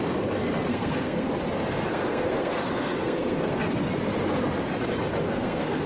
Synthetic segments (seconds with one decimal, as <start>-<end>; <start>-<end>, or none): 0.7-1.3; 1.9-3.7; 5.2-5.9